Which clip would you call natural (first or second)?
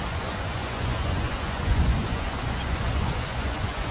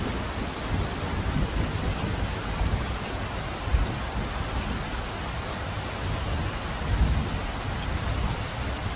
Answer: second